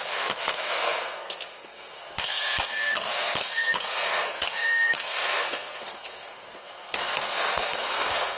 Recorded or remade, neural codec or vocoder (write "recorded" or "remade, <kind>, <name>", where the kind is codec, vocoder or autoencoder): remade, codec, SNAC